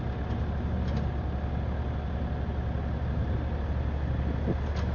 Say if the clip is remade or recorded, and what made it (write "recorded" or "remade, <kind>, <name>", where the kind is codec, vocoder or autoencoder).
recorded